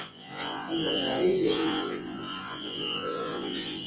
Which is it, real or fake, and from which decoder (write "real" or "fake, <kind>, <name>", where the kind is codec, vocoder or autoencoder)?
fake, vocoder, Vocos